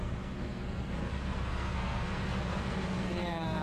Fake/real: fake